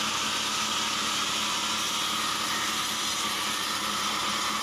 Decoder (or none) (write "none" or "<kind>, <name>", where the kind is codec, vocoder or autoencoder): none